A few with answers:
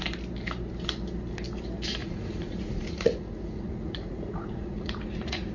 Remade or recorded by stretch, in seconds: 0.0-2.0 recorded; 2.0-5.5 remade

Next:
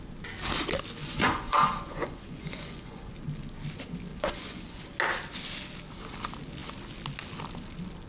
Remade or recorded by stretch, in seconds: 0.0-1.0 recorded; 1.0-3.1 remade; 3.1-4.1 recorded; 4.1-4.8 remade; 4.8-8.1 recorded

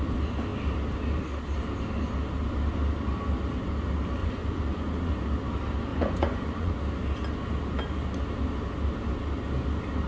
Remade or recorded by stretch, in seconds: 0.0-4.2 recorded; 4.2-5.1 remade; 5.1-5.9 recorded; 5.9-6.7 remade; 6.7-10.1 recorded

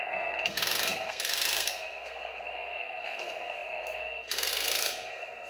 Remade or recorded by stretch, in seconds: 0.0-5.5 remade

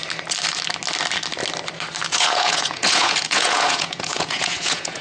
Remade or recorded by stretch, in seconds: 0.0-2.1 recorded; 2.1-5.0 remade

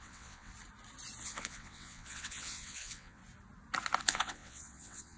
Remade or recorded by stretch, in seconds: 0.0-0.5 remade; 0.5-1.2 recorded; 1.2-3.2 remade; 3.2-4.0 recorded; 4.0-5.2 remade